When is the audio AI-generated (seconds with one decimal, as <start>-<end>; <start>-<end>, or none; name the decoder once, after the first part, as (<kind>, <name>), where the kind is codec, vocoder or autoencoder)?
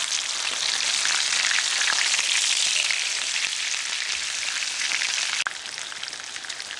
none